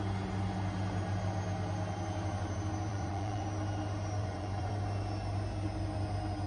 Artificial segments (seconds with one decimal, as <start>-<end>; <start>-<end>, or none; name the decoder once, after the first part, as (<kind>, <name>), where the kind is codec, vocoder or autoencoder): 2.9-3.4 (vocoder, Vocos); 4.2-4.7